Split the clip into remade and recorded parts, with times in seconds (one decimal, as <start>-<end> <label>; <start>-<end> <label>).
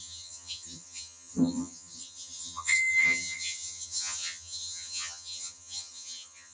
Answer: 0.0-6.5 remade